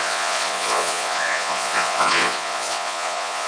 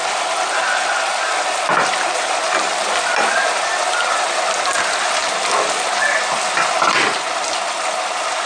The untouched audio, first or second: second